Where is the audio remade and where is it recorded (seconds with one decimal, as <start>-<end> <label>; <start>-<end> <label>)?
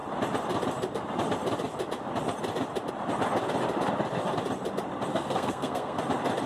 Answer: 0.0-5.1 recorded; 5.1-6.0 remade; 6.0-6.5 recorded